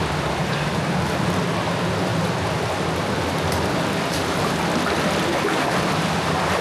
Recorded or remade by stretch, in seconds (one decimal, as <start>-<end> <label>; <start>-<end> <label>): 0.0-6.6 recorded